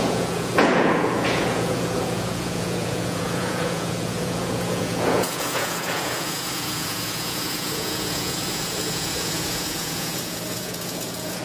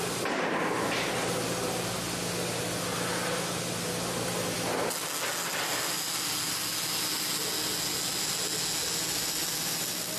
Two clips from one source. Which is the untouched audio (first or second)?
second